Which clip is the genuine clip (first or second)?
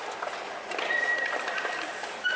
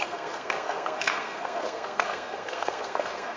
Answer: first